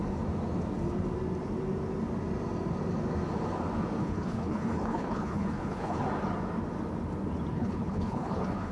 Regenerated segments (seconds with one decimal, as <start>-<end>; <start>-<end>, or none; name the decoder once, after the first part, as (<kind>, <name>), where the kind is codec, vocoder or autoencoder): 4.0-6.0 (codec, HILCodec); 7.5-8.7